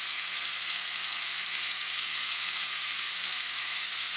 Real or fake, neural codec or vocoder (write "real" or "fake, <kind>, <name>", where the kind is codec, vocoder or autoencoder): fake, codec, SNAC